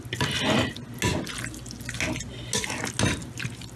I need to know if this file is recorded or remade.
recorded